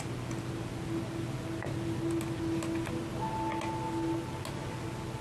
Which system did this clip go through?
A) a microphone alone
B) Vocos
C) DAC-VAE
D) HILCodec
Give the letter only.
A